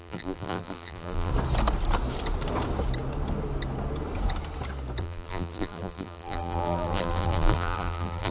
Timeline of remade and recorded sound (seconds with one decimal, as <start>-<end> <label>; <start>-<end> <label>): 0.0-1.3 remade; 1.3-5.0 recorded; 5.0-8.3 remade